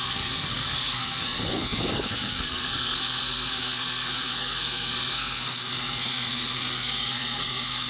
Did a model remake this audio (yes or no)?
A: yes